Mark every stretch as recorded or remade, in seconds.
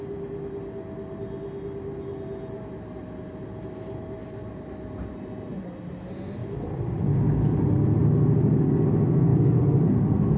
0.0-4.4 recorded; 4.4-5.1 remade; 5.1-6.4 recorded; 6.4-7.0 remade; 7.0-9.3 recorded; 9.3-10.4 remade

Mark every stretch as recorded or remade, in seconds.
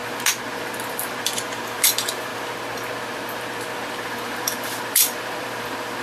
0.0-0.9 recorded; 0.9-2.3 remade; 2.3-3.9 recorded; 3.9-6.0 remade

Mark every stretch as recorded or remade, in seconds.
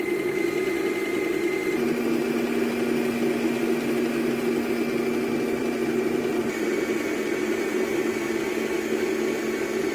0.0-5.6 recorded; 5.6-8.3 remade; 8.3-9.9 recorded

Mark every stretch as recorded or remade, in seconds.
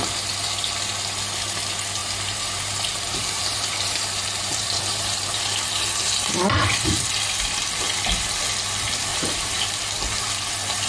0.0-2.0 recorded; 2.0-5.4 remade; 5.4-9.1 recorded; 9.1-10.3 remade; 10.3-10.9 recorded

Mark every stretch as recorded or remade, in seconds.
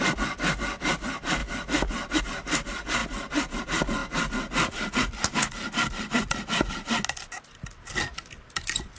0.0-9.0 recorded